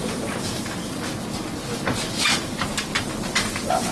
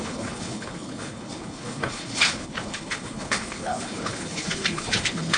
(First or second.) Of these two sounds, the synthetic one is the second